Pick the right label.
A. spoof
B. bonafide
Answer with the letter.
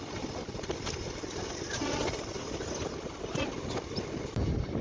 B